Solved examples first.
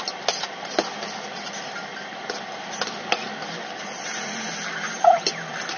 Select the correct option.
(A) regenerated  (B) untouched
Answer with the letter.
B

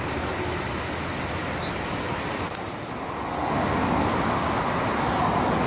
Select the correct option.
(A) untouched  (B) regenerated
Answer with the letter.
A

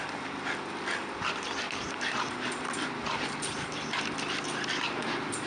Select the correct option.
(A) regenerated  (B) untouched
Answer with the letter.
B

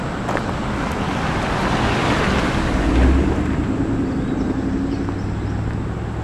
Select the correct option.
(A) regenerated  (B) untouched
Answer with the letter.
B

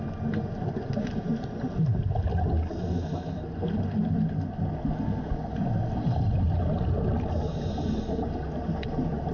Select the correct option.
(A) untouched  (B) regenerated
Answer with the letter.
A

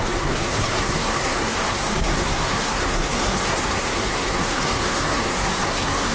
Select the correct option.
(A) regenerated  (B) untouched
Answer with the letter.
A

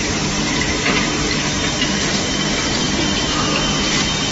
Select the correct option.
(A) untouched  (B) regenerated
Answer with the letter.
A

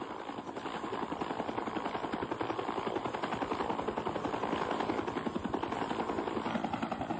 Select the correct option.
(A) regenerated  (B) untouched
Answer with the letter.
B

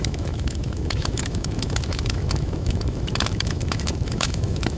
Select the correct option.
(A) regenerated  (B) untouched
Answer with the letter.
A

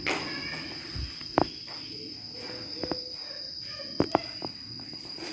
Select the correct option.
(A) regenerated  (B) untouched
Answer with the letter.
B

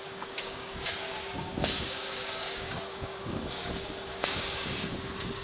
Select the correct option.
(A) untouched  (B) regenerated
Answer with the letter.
B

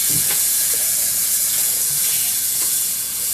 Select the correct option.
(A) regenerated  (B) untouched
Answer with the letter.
A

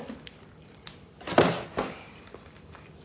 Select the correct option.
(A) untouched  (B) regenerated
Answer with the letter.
B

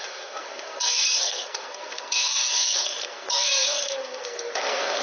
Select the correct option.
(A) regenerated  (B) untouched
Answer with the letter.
A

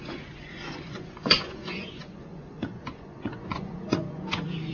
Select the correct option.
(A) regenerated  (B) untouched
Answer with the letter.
A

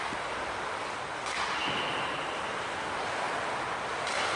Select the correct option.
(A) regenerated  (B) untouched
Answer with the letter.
B